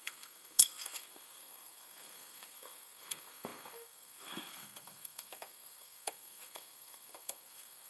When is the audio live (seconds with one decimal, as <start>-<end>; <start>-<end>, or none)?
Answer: none